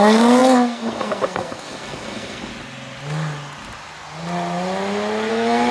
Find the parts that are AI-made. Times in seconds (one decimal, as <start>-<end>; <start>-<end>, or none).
0.0-2.5; 5.3-5.7